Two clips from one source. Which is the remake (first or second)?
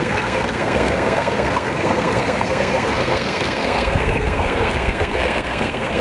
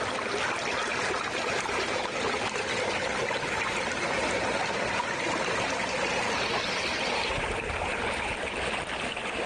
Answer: first